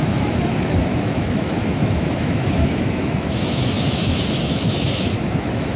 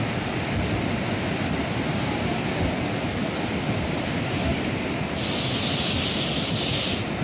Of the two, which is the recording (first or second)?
second